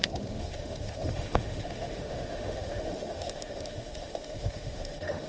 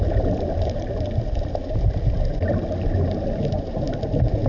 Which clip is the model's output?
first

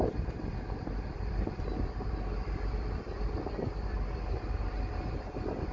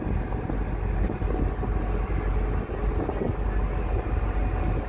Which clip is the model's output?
first